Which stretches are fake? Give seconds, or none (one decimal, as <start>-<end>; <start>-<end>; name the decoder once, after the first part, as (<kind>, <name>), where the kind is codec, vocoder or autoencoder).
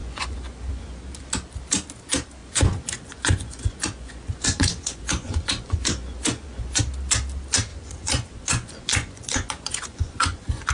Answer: 0.0-1.0 (vocoder, Vocos); 2.4-6.8; 7.7-10.7